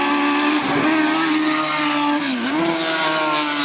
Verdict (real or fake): real